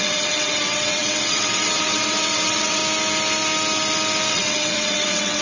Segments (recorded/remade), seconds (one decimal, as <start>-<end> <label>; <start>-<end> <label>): 0.0-2.8 remade; 2.8-4.3 recorded; 4.3-5.4 remade